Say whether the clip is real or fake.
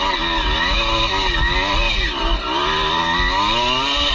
real